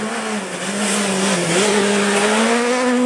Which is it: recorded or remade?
recorded